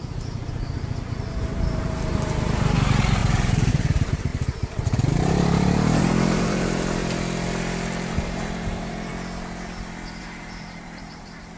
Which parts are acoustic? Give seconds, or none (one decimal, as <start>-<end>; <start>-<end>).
7.0-8.1; 9.1-10.2

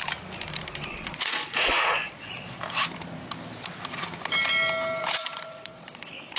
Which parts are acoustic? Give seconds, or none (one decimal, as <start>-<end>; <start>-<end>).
0.0-0.9; 2.6-5.0

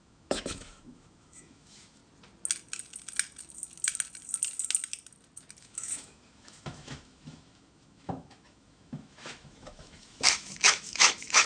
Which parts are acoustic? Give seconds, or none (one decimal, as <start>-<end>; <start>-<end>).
2.0-5.6

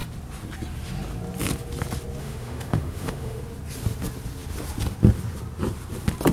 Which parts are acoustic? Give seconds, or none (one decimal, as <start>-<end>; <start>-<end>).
0.0-2.2; 3.4-6.3

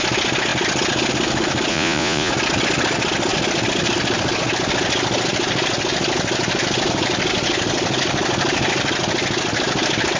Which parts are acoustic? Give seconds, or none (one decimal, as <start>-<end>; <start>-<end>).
0.0-1.7; 2.3-10.2

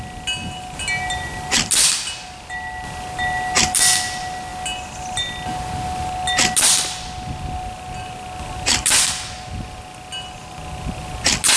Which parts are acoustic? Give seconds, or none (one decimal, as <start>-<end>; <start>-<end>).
0.0-11.6

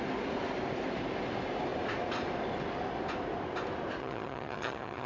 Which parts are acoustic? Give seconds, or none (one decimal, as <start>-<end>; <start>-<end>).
0.0-4.0